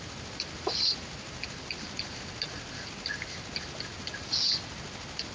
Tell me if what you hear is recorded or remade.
recorded